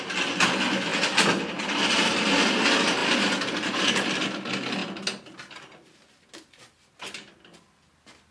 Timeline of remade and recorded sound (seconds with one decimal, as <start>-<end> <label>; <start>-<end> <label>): 0.0-0.9 recorded; 0.9-1.6 remade; 1.6-3.0 recorded; 3.0-3.8 remade; 3.8-8.3 recorded